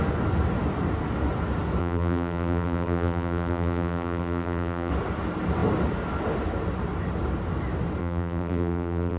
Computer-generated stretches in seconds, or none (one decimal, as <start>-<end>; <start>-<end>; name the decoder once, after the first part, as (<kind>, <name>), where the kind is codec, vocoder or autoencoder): 1.8-4.9 (vocoder, BigVGAN v2); 8.0-9.2